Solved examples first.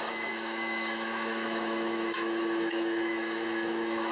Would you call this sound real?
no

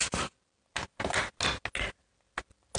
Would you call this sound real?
yes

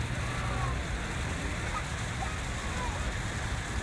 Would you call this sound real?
yes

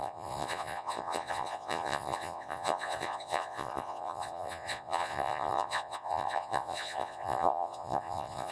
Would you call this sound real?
no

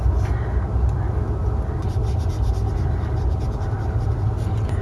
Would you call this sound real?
yes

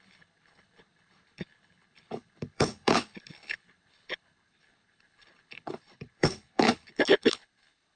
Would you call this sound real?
no